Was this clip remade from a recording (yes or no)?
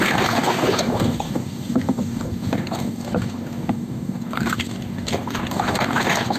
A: yes